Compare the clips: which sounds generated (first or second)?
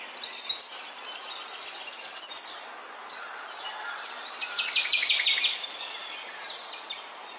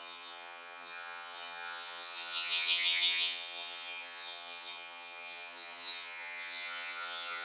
second